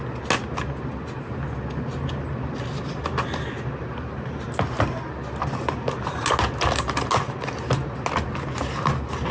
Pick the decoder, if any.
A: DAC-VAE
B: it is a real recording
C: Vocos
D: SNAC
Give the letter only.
B